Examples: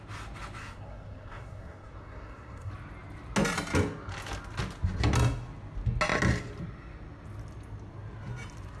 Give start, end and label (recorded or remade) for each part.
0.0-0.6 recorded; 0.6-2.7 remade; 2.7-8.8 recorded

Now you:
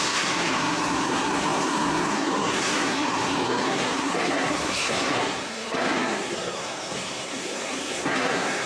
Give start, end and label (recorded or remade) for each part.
0.0-8.7 remade

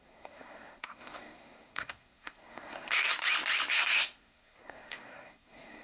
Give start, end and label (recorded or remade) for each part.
0.0-3.0 remade; 3.0-3.7 recorded; 3.7-5.8 remade

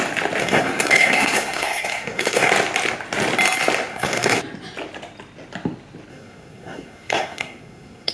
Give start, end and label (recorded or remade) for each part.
0.0-0.4 recorded; 0.4-2.5 remade; 2.5-3.9 recorded; 3.9-4.4 remade; 4.4-6.1 recorded; 6.1-8.1 remade

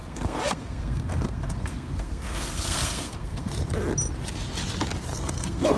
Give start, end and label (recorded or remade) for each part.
0.0-3.5 remade; 3.5-5.1 recorded; 5.1-5.8 remade

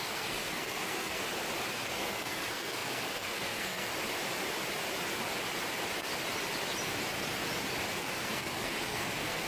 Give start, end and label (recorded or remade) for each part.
0.0-1.2 remade; 1.2-1.7 recorded; 1.7-3.9 remade; 3.9-8.0 recorded; 8.0-9.5 remade

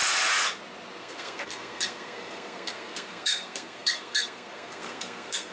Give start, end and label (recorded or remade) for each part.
0.0-1.0 recorded; 1.0-5.5 remade